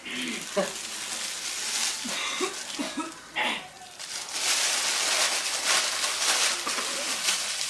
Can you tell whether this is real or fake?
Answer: real